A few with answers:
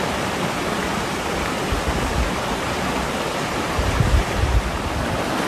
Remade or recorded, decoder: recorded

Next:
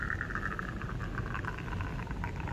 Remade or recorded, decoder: recorded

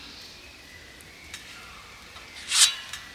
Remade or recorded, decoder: remade, vocoder, BigVGAN v2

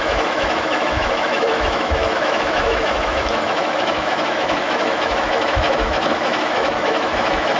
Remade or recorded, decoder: remade, autoencoder, DAC-VAE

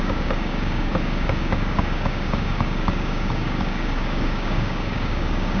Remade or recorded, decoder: remade, codec, DAC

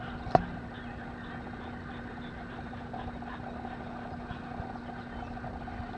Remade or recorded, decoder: recorded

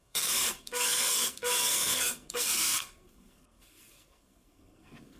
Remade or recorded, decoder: remade, codec, SNAC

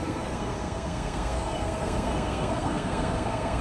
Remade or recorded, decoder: remade, codec, SNAC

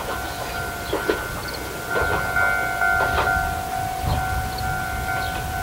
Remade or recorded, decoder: recorded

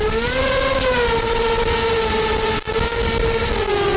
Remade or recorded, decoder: recorded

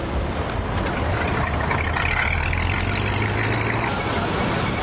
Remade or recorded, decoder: recorded